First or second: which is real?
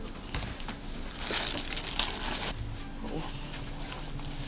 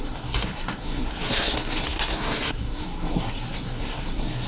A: first